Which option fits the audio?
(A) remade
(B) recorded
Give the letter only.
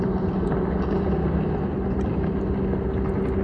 B